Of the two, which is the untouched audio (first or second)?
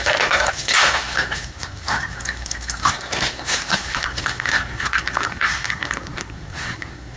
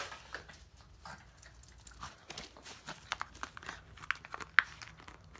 second